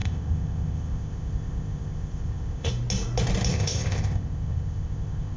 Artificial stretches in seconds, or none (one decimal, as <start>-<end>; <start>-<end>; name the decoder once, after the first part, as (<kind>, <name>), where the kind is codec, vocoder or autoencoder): 0.0-2.7 (codec, ZipCodec); 3.5-5.4